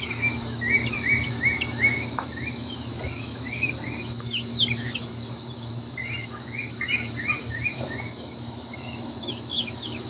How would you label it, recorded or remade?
remade